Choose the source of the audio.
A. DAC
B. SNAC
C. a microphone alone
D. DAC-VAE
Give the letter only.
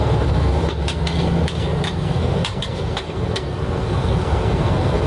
B